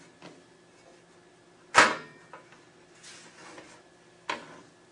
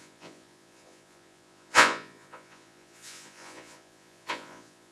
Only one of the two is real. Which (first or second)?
first